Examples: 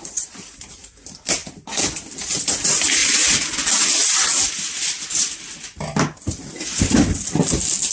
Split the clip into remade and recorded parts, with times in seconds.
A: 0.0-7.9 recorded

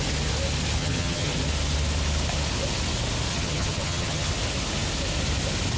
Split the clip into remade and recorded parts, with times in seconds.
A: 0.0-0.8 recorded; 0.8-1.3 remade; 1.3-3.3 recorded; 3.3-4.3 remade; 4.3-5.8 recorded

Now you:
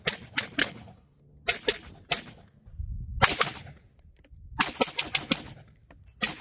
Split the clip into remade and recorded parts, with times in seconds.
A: 0.0-0.6 recorded; 0.6-1.2 remade; 1.2-6.4 recorded

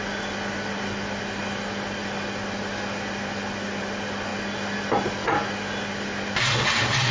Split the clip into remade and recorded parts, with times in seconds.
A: 0.0-7.1 recorded

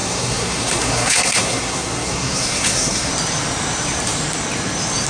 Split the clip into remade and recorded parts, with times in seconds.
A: 0.0-3.1 remade; 3.1-5.1 recorded

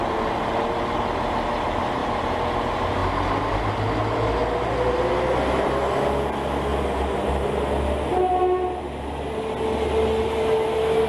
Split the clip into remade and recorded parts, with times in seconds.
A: 0.0-11.1 recorded